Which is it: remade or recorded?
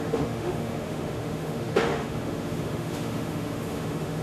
remade